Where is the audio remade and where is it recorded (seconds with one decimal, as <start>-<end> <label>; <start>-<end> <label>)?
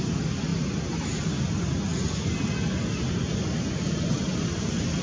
0.0-5.0 recorded